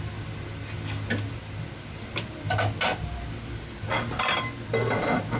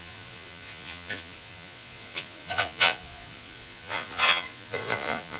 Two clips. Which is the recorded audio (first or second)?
first